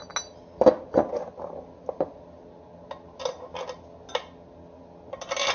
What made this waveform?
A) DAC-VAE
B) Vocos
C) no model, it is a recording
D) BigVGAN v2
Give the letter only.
C